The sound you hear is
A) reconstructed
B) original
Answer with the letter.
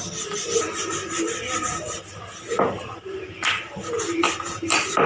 B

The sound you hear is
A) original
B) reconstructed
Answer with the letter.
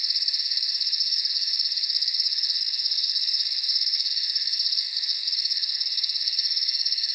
B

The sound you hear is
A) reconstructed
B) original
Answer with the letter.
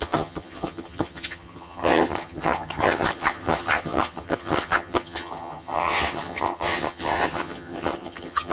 A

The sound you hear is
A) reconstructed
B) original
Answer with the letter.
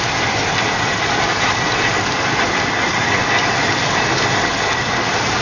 B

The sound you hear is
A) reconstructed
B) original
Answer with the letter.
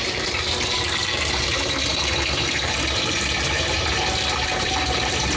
A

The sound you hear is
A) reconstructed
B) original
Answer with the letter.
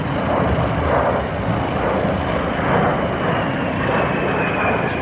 B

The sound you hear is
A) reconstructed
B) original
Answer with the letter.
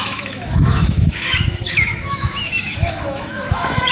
A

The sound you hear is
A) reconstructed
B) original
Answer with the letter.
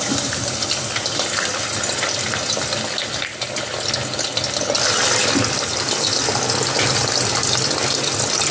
B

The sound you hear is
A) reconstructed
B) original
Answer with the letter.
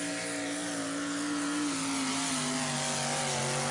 B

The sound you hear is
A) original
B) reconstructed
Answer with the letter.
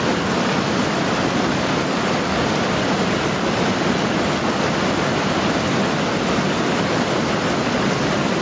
A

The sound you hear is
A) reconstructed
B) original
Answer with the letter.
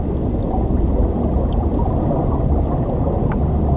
B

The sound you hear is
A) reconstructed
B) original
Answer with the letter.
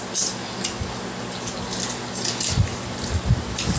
B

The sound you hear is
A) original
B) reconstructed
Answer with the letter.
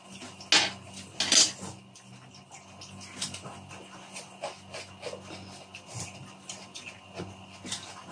A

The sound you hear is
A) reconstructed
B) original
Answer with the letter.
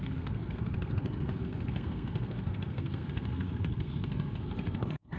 A